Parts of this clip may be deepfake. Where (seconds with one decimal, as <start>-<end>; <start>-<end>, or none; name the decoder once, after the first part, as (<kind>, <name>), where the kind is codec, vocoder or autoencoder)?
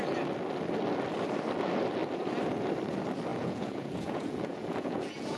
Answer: 3.3-5.4 (vocoder, Vocos)